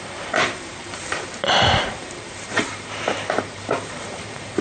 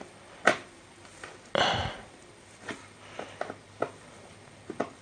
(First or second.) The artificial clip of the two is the first